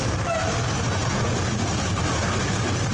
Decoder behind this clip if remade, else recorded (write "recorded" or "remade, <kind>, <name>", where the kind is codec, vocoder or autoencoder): recorded